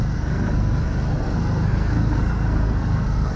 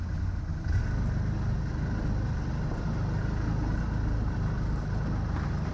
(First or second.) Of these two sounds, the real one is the second